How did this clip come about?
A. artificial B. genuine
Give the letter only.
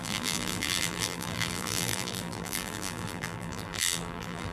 A